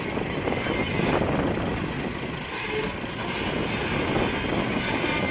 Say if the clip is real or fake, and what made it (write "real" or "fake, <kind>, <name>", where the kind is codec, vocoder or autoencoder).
real